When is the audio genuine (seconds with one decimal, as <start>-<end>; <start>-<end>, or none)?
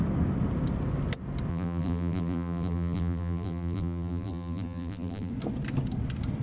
0.0-1.5; 5.3-6.4